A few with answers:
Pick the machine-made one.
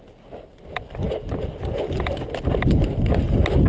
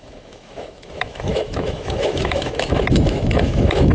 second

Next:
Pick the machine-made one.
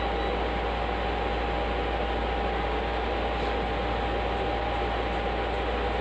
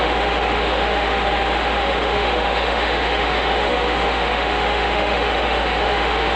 second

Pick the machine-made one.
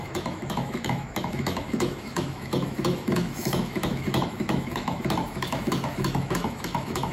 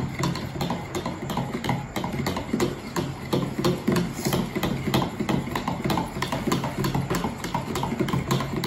first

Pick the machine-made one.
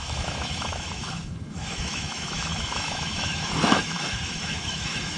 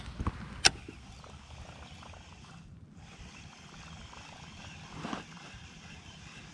first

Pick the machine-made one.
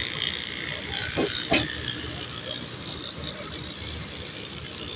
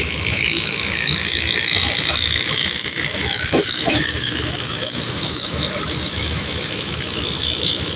second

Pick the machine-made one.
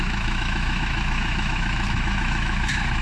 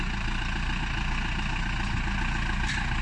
first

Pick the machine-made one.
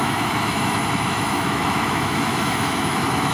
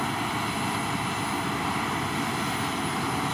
first